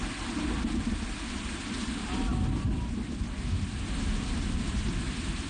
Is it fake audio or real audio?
real